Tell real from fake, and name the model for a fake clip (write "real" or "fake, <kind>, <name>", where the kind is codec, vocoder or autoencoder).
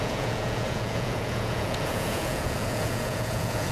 fake, vocoder, Vocos